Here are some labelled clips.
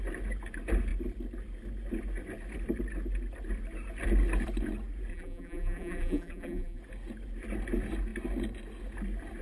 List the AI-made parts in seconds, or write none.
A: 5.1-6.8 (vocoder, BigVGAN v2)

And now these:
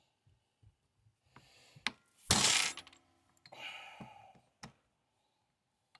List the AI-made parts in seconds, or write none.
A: none

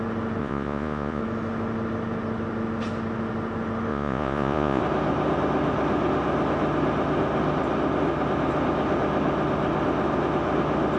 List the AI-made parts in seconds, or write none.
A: 0.4-1.2 (vocoder, Vocos); 3.9-4.8

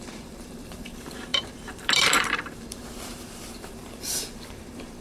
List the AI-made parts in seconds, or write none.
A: 0.0-5.0 (vocoder, BigVGAN v2)

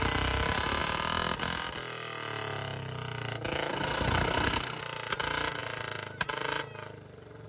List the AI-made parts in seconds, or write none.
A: 3.7-4.8 (codec, SNAC)